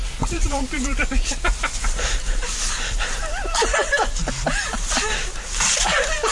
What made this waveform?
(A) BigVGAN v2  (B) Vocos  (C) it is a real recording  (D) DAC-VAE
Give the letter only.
A